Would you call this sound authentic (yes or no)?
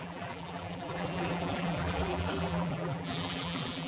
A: no